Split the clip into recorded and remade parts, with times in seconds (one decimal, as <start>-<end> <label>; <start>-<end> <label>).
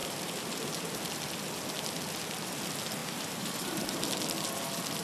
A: 0.0-3.0 recorded; 3.0-4.0 remade; 4.0-5.0 recorded